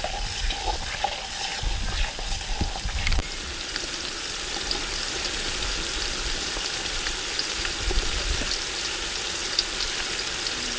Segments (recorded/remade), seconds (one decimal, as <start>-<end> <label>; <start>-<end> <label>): 0.0-3.2 recorded; 3.2-8.1 remade; 8.1-10.8 recorded